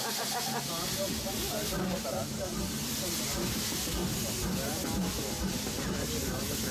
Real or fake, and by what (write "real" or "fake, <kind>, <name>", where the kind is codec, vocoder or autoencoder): real